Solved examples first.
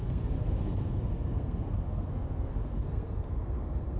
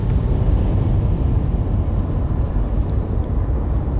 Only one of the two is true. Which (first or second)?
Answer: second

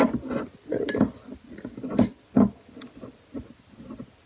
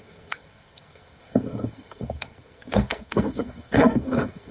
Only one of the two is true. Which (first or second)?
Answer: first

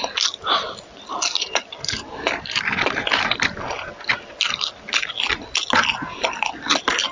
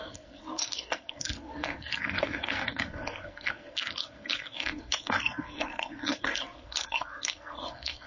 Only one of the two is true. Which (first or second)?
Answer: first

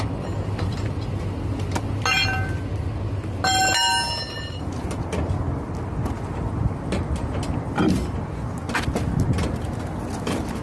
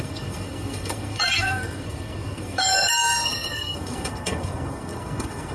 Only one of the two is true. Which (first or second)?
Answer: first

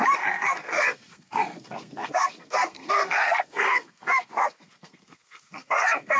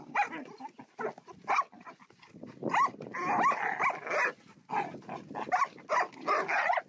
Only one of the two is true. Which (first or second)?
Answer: second